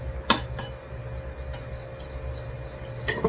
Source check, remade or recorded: recorded